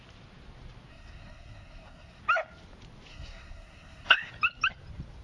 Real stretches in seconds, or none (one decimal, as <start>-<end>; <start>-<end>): 0.0-0.9; 2.2-3.1; 4.3-5.2